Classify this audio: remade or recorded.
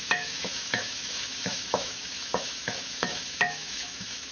remade